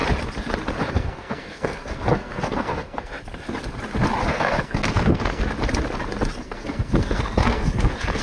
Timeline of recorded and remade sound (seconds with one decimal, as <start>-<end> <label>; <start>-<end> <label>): 0.0-0.9 recorded; 0.9-3.1 remade; 3.1-4.3 recorded; 4.3-5.4 remade; 5.4-6.4 recorded; 6.4-8.2 remade